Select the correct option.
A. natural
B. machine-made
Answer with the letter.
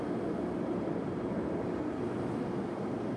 A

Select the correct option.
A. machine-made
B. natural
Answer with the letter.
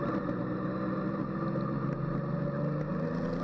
B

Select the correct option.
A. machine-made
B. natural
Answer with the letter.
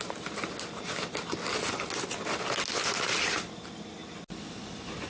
B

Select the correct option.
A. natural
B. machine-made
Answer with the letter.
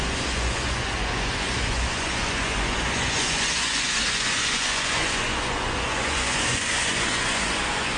B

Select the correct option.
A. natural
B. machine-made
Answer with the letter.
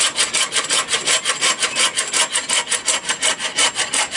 A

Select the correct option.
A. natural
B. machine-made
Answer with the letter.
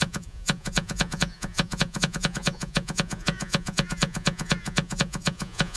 B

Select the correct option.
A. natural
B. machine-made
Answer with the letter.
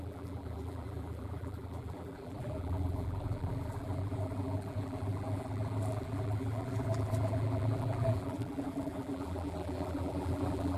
B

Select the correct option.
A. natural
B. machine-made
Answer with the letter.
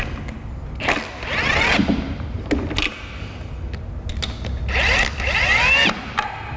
A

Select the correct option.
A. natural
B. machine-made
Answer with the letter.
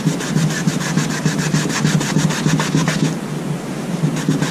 A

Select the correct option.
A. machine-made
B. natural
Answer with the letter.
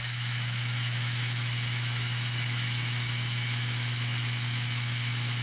A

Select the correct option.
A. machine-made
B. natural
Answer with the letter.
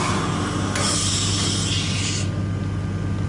B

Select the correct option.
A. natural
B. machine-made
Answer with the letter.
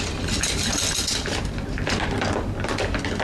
A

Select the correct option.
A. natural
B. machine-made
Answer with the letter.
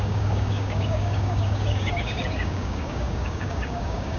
B